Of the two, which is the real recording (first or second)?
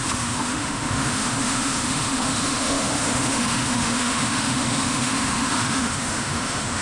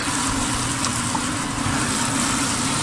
second